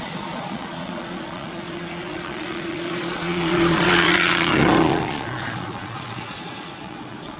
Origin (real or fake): fake